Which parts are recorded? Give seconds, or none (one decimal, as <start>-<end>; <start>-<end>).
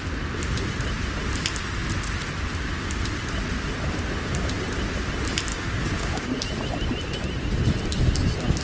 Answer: 0.0-5.5; 6.4-8.6